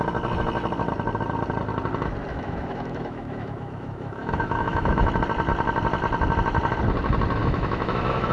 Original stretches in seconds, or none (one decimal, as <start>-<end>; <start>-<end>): 0.0-2.3; 5.1-7.4